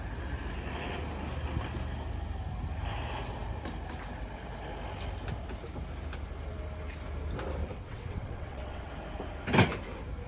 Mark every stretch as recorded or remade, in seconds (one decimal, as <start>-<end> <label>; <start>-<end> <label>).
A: 0.0-7.6 recorded; 7.6-8.9 remade; 8.9-10.3 recorded